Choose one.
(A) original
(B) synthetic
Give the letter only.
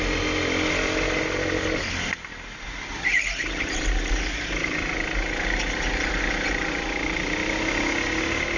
A